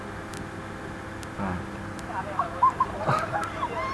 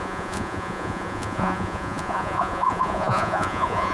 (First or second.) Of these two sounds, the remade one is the second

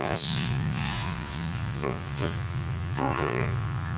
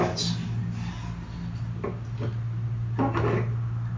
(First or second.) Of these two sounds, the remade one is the first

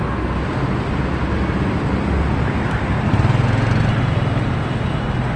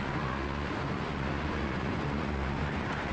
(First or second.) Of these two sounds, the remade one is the second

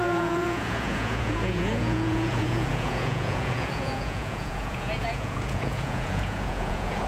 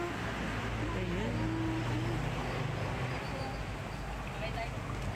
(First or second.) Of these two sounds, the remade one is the first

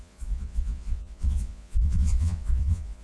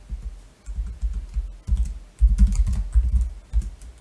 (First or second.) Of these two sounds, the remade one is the first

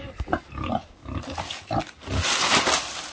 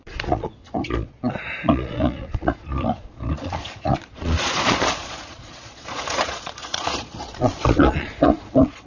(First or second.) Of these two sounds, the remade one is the second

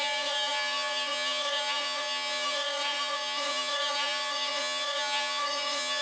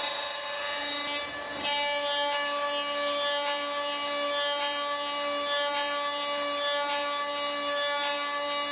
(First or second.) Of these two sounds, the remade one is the first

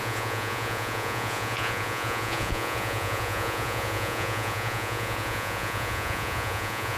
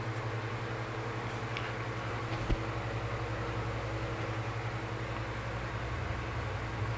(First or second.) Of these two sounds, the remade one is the first